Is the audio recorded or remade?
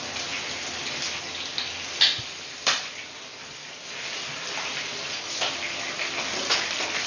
recorded